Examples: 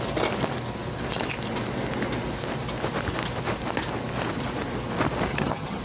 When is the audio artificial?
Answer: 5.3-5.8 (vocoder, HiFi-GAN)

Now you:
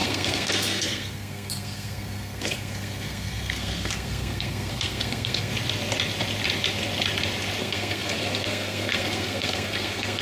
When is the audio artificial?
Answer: 0.0-5.5 (codec, SNAC); 7.6-10.2